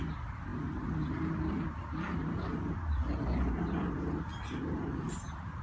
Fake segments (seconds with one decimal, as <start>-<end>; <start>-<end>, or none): none